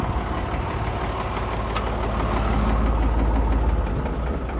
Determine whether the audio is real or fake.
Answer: real